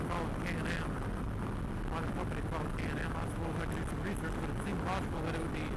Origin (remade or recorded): recorded